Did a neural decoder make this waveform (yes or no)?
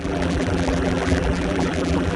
yes